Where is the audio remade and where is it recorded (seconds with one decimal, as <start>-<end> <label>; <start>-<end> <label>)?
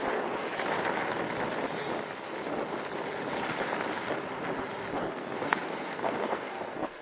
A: 0.0-5.0 recorded; 5.0-7.0 remade